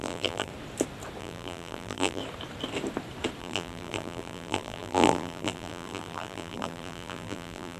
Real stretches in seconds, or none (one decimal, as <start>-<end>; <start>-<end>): 0.5-1.2; 2.2-3.4